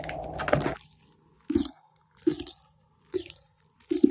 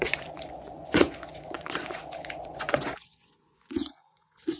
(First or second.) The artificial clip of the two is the second